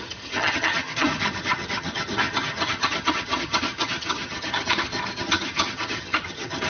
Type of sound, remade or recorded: remade